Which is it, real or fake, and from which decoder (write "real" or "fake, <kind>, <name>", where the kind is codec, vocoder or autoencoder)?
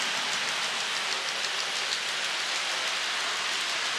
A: real